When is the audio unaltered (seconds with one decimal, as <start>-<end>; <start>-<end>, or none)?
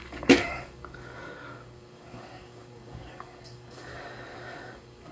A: none